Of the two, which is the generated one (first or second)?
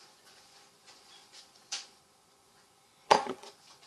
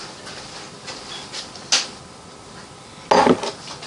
first